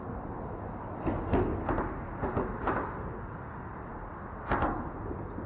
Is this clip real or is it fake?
real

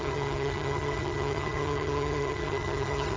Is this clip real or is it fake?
fake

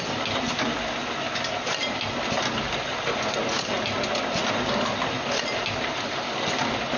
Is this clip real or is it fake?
real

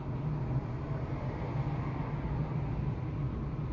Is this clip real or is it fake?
real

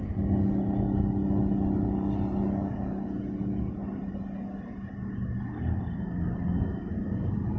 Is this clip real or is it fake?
real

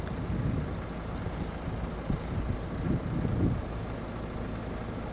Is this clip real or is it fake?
real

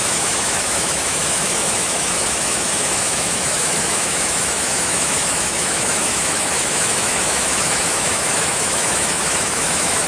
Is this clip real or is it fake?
fake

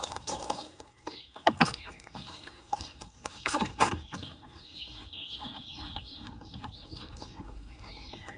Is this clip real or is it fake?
fake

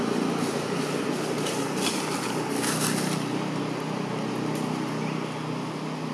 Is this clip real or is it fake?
real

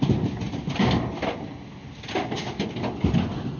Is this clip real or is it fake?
real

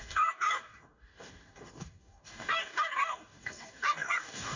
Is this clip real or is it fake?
fake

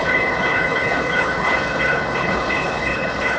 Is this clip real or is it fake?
fake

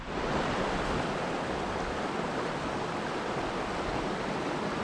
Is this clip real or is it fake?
real